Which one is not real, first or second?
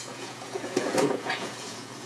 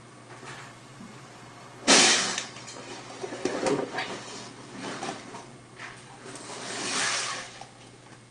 first